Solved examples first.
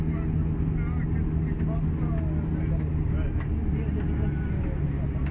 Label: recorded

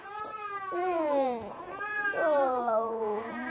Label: remade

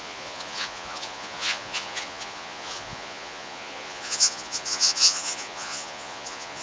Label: remade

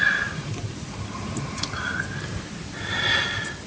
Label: recorded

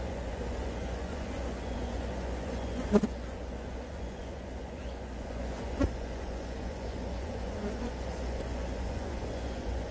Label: remade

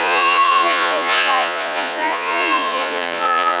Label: remade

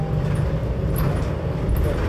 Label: recorded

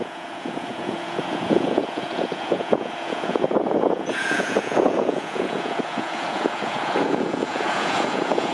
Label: remade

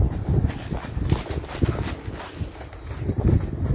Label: recorded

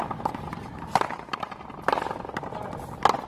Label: recorded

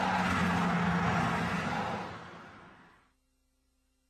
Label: recorded